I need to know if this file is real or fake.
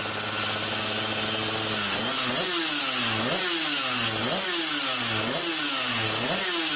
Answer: real